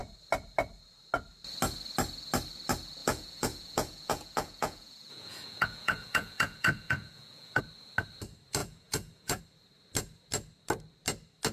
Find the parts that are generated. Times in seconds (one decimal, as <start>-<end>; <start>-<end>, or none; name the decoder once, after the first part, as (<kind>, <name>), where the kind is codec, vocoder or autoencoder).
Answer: 3.0-7.6 (vocoder, Vocos); 8.6-9.4